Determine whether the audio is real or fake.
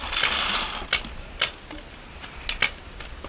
real